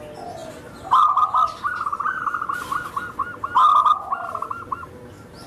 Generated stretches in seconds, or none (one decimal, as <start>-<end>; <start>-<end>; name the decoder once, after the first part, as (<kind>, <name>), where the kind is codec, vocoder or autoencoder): none